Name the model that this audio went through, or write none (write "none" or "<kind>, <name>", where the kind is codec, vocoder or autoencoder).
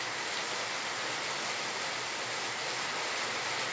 none